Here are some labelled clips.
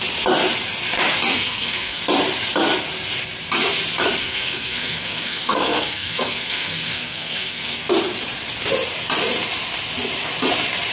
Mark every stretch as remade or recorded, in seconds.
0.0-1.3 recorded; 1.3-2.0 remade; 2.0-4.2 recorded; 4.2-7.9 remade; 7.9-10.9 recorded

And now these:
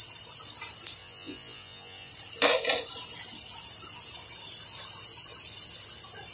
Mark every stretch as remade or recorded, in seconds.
0.0-1.0 recorded; 1.0-2.1 remade; 2.1-6.3 recorded

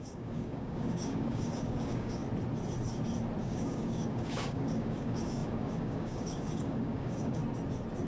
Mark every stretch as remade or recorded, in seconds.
0.0-2.2 remade; 2.2-3.4 recorded; 3.4-7.4 remade; 7.4-8.1 recorded

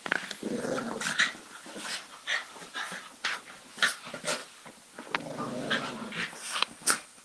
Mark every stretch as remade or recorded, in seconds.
0.0-6.4 recorded; 6.4-7.2 remade

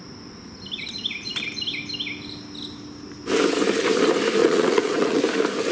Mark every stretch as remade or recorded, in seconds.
0.0-4.4 recorded; 4.4-5.2 remade; 5.2-5.7 recorded

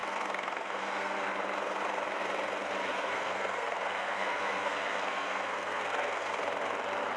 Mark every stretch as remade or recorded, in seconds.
0.0-1.3 remade; 1.3-2.9 recorded; 2.9-6.3 remade; 6.3-7.2 recorded

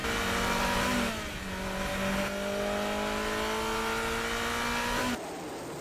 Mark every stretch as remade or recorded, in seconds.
0.0-5.8 recorded

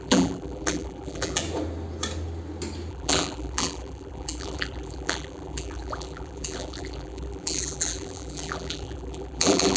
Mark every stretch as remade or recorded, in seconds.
0.0-1.4 remade; 1.4-2.9 recorded; 2.9-9.8 remade